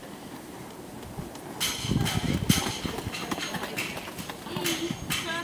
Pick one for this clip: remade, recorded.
recorded